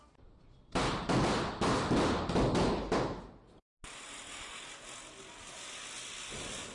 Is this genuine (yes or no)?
yes